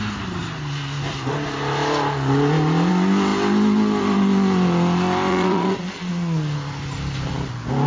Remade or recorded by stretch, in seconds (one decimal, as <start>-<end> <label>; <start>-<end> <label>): 0.0-5.3 recorded; 5.3-6.1 remade; 6.1-7.9 recorded